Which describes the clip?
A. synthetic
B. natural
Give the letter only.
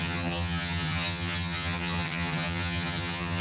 A